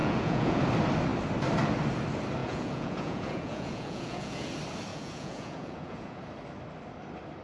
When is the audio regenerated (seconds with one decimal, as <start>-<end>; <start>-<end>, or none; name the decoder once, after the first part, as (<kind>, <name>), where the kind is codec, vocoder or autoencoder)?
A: 0.0-0.6 (vocoder, Vocos); 2.4-4.5; 4.9-6.2